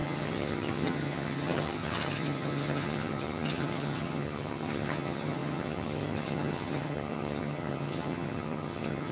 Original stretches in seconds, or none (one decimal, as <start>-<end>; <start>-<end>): none